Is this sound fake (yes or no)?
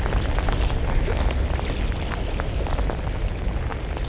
no